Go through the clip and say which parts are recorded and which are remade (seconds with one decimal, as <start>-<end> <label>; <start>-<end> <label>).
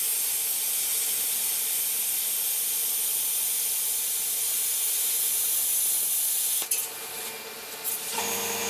0.0-8.7 recorded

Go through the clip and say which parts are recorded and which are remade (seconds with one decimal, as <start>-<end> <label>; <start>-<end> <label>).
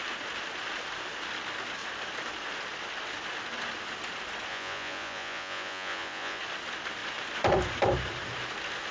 0.0-4.5 recorded; 4.5-6.4 remade; 6.4-8.9 recorded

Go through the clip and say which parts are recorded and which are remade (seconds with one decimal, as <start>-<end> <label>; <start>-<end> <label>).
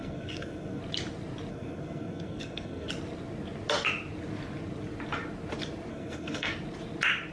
0.0-0.8 remade; 0.8-1.5 recorded; 1.5-2.9 remade; 2.9-5.9 recorded; 5.9-6.5 remade; 6.5-7.3 recorded